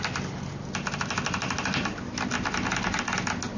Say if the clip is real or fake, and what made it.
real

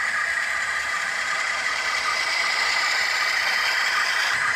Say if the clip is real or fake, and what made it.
fake, vocoder, BigVGAN v2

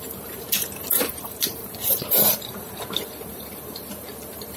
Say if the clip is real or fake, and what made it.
fake, vocoder, BigVGAN v2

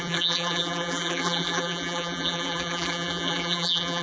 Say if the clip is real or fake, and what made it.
fake, vocoder, BigVGAN v2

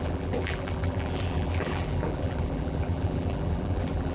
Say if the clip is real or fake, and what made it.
fake, vocoder, BigVGAN v2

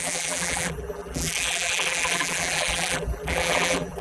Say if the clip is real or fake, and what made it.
fake, vocoder, BigVGAN v2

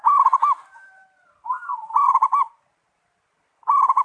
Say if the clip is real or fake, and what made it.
fake, vocoder, BigVGAN v2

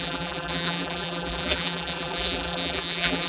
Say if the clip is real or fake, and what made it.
fake, vocoder, BigVGAN v2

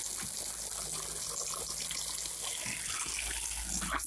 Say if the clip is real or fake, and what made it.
real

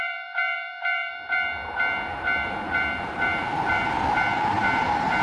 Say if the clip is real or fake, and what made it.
fake, vocoder, BigVGAN v2